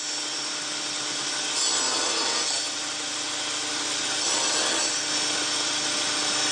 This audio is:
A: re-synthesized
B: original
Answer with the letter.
B